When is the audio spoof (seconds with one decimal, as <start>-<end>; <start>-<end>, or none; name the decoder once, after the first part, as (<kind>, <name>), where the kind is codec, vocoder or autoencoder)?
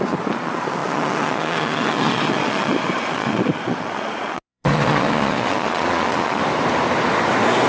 0.0-6.4 (vocoder, Vocos)